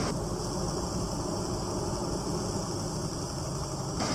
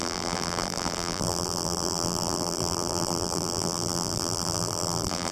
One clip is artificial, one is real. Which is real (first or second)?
first